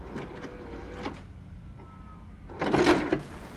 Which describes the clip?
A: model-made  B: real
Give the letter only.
B